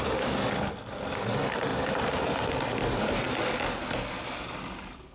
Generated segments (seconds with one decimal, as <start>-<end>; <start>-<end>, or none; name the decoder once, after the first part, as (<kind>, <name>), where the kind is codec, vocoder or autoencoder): 0.0-1.7 (vocoder, BigVGAN v2); 2.4-5.1